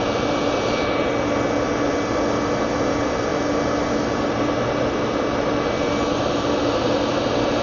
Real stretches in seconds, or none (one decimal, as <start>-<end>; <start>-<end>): 0.0-7.6